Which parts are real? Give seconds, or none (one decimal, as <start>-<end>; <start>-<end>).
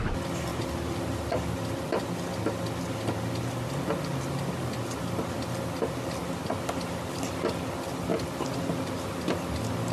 0.0-0.5; 2.4-6.2; 7.4-8.1; 8.6-9.9